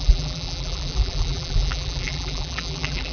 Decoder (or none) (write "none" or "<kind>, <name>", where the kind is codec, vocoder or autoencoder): vocoder, BigVGAN v2